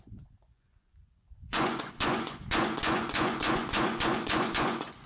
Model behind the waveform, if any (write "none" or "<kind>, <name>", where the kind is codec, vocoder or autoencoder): vocoder, Vocos